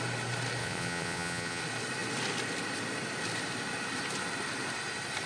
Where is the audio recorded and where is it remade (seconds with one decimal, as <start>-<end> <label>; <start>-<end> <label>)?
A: 0.0-0.6 recorded; 0.6-1.6 remade; 1.6-5.3 recorded